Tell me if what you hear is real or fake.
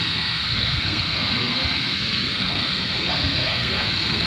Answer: fake